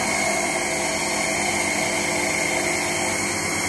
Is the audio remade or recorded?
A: recorded